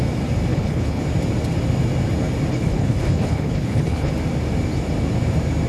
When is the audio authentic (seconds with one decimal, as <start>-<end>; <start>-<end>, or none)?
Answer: 0.0-0.5; 1.0-2.5; 4.1-5.7